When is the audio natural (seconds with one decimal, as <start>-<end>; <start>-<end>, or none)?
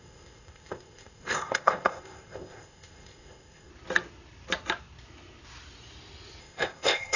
3.7-6.4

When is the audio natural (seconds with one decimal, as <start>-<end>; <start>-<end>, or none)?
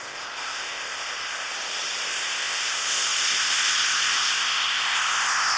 1.5-2.1